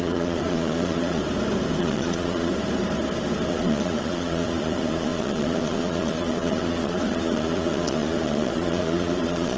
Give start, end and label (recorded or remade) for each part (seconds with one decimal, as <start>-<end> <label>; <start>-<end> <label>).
0.0-1.2 remade; 1.2-1.8 recorded; 1.8-2.5 remade; 2.5-3.5 recorded; 3.5-9.6 remade